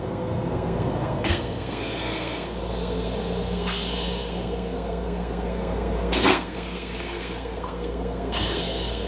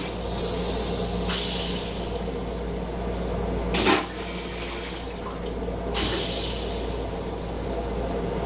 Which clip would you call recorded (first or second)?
second